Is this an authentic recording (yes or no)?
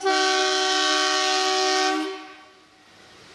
yes